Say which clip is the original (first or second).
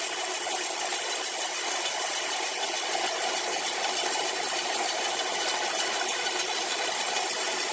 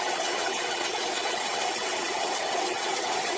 first